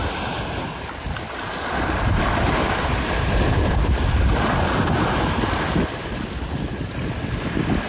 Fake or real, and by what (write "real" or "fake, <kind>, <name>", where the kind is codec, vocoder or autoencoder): real